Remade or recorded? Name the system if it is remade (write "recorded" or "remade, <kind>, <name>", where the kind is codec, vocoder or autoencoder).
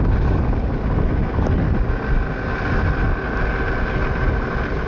recorded